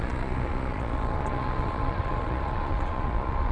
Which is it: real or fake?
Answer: fake